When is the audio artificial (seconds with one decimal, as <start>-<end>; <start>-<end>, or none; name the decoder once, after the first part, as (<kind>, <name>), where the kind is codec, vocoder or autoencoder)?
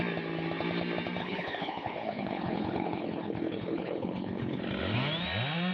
1.2-4.6 (codec, HILCodec)